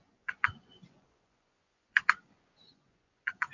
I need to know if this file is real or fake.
fake